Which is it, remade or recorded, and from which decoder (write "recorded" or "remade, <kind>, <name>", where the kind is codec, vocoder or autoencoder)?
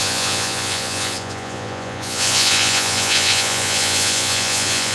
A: remade, vocoder, Vocos